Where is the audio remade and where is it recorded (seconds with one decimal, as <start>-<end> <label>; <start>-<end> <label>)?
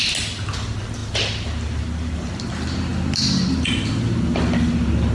0.0-5.1 recorded